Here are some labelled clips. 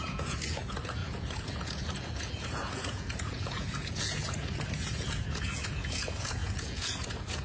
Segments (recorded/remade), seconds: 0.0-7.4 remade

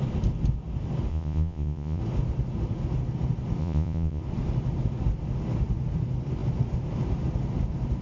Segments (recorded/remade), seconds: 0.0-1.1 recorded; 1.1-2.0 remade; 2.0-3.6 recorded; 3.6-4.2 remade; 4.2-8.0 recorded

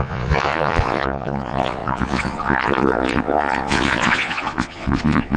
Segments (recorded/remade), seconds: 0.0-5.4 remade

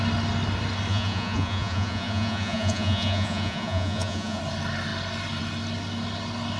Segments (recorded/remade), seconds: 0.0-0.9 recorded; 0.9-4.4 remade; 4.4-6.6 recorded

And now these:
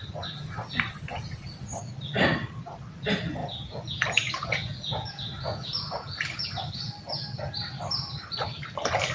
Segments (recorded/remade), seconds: 0.0-3.4 recorded; 3.4-6.5 remade; 6.5-9.1 recorded